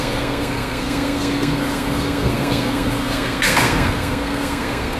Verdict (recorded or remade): remade